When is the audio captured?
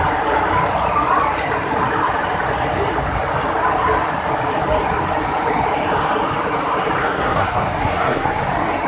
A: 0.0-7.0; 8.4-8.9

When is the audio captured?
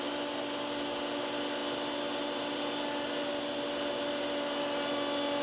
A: 0.0-5.4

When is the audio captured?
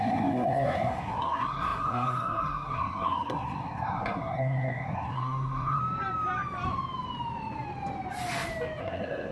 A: 5.8-8.8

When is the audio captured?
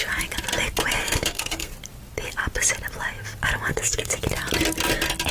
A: 0.0-1.0; 1.7-3.7; 4.2-5.3